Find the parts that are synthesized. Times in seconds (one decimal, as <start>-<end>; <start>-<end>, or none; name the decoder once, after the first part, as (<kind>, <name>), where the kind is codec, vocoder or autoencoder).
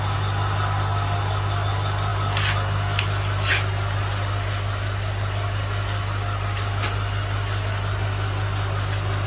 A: none